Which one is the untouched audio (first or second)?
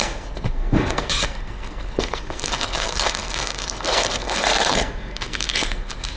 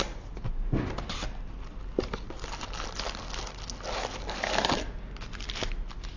second